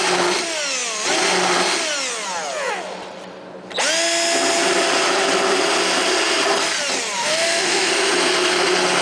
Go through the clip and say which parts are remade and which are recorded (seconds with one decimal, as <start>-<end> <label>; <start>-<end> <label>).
0.0-7.2 recorded; 7.2-7.9 remade; 7.9-9.0 recorded

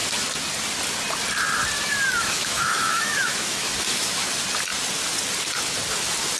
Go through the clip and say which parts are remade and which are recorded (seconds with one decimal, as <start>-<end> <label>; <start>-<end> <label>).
0.0-2.2 recorded; 2.2-4.3 remade; 4.3-6.4 recorded